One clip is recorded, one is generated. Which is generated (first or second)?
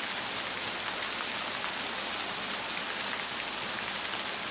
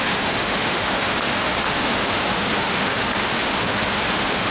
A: second